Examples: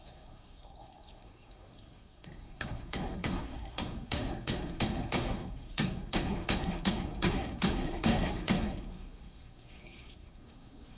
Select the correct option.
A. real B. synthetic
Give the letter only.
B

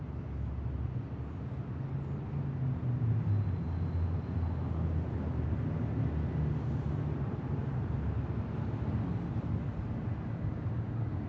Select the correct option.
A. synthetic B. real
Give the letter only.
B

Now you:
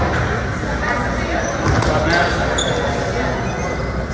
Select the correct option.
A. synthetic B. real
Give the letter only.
B